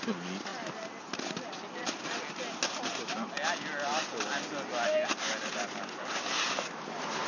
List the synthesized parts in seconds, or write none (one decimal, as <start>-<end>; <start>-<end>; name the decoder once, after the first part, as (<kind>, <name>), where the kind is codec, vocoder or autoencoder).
none